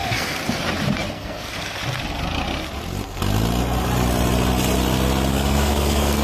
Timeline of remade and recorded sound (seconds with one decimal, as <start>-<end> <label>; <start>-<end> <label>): 0.0-0.4 remade; 0.4-1.1 recorded; 1.1-1.8 remade; 1.8-5.3 recorded; 5.3-6.2 remade